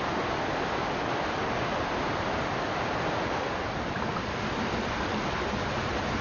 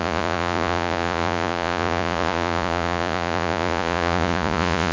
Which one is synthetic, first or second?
second